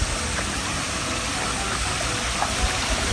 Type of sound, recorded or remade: recorded